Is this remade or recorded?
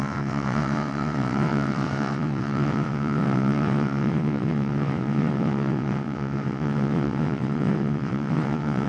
remade